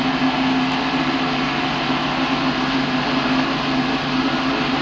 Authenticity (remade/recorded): recorded